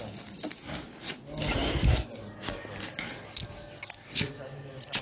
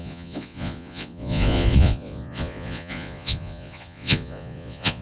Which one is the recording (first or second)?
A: first